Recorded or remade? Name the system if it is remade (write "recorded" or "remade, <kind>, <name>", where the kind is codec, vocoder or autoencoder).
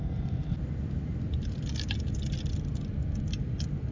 recorded